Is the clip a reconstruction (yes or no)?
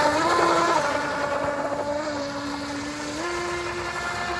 no